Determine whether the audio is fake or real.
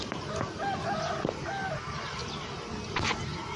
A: real